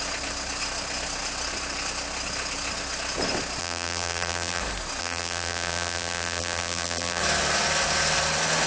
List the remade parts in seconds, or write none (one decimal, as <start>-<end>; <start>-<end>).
3.6-4.6; 5.0-7.2